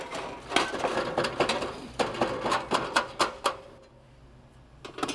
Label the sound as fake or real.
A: real